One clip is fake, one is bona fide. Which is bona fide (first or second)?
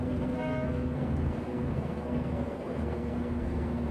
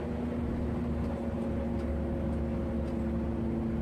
second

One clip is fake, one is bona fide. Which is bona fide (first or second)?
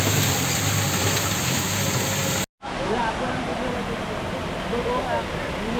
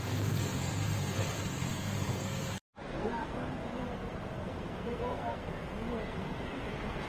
first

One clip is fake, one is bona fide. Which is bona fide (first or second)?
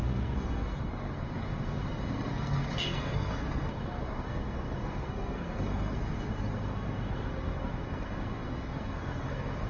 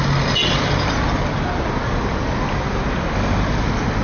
second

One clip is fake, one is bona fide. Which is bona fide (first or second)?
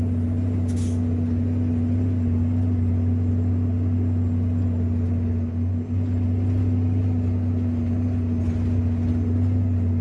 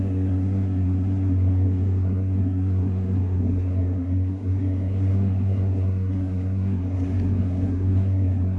first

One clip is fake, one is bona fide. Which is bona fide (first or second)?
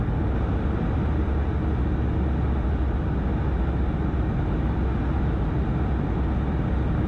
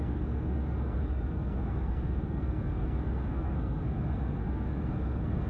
first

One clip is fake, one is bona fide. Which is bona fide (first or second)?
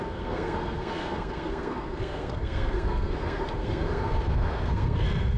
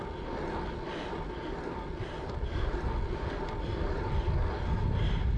second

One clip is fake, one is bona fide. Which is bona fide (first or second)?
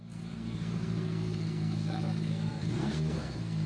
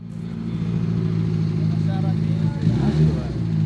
second